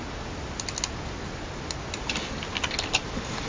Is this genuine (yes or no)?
yes